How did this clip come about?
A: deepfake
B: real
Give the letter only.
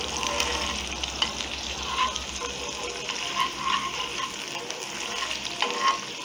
B